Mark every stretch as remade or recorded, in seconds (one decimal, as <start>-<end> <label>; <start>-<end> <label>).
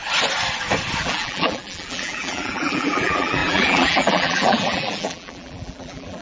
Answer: 0.0-1.0 recorded; 1.0-6.2 remade